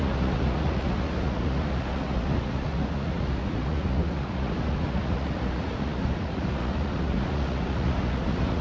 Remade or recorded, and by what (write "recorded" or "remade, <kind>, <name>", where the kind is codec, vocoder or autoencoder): remade, vocoder, Vocos